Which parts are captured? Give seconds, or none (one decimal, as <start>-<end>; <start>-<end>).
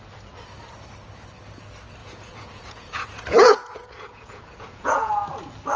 0.0-2.0; 5.1-5.8